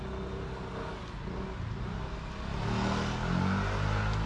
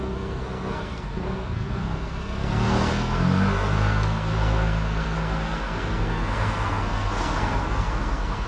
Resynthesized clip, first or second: second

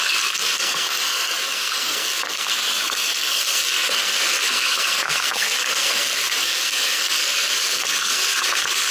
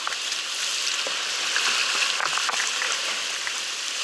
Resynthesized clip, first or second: first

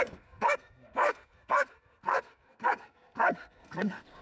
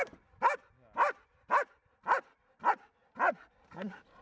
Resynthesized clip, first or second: first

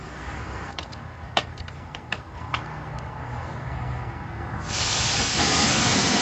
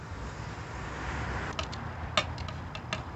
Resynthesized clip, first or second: first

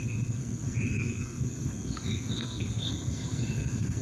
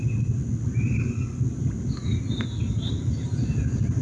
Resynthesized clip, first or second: first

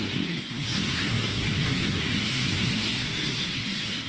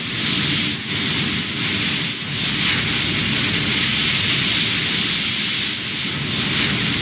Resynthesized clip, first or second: first